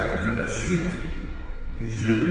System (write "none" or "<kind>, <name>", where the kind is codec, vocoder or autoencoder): codec, SNAC